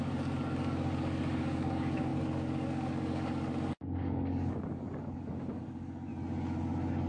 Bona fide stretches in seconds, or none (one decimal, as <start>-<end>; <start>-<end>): 6.1-7.1